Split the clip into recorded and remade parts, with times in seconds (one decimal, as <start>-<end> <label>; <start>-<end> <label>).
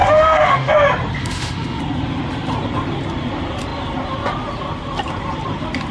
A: 0.0-0.7 remade; 0.7-1.2 recorded; 1.2-1.8 remade; 1.8-5.9 recorded